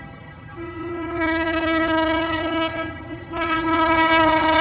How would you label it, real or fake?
fake